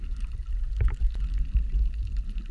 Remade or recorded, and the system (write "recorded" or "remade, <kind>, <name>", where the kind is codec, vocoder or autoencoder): recorded